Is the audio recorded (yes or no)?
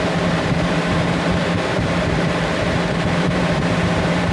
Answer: no